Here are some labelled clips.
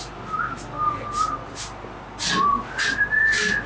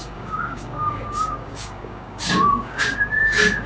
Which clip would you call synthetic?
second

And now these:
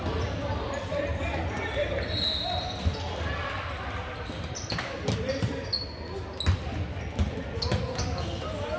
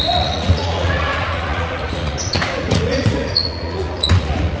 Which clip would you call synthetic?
second